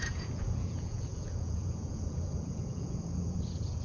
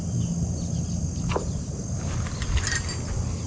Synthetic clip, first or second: first